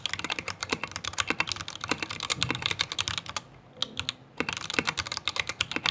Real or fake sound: real